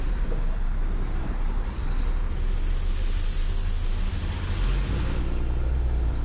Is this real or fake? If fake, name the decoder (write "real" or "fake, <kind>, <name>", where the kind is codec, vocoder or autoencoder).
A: real